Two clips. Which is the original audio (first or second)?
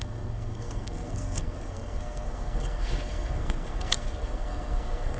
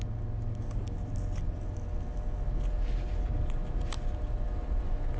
second